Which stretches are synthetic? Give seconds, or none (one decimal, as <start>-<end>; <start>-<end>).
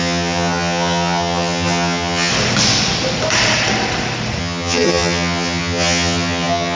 0.0-2.3; 4.4-6.8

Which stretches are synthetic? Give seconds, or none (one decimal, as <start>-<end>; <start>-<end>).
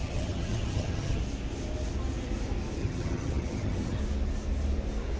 0.0-1.2; 2.8-4.0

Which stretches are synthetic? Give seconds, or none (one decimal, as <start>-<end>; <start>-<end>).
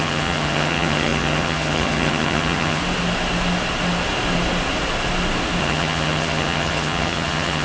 0.0-2.8; 5.6-7.6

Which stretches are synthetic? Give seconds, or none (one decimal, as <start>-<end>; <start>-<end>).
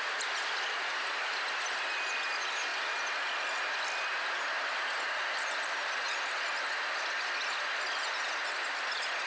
none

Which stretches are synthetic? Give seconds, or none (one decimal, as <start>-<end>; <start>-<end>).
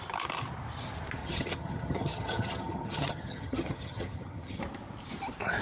1.2-4.6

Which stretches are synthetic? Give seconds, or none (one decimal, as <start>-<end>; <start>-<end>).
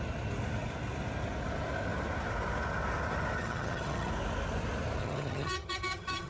3.4-4.1; 5.0-6.3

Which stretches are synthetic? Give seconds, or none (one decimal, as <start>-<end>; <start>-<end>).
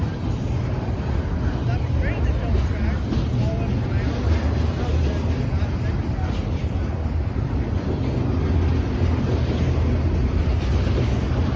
none